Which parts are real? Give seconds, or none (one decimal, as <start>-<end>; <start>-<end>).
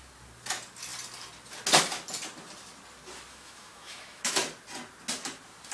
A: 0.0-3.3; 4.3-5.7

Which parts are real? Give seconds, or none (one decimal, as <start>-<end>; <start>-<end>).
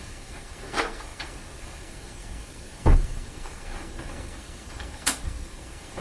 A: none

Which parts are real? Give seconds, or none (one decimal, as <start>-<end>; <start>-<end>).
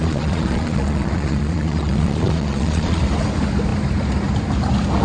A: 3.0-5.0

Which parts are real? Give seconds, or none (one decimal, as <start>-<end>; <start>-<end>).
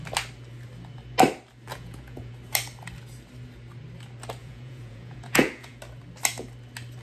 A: 0.0-1.7; 2.3-4.4; 5.8-7.0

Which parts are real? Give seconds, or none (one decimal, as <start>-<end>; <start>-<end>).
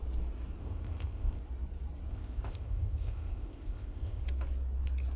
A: 0.0-0.6; 1.4-2.1; 4.2-5.2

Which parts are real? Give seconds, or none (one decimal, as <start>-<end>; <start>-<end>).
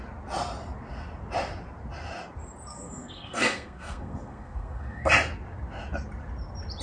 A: 0.0-2.7; 5.1-6.8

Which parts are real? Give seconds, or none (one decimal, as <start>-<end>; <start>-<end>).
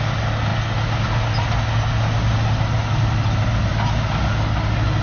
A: 0.0-5.0